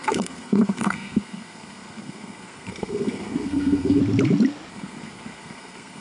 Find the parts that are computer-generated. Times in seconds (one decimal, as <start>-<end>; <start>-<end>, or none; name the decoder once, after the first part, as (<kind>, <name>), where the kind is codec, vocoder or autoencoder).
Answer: 0.0-4.0 (codec, SNAC); 4.7-6.0